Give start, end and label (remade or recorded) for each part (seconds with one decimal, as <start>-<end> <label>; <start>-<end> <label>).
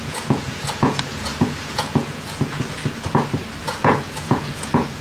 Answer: 0.0-2.8 remade; 2.8-3.6 recorded; 3.6-5.0 remade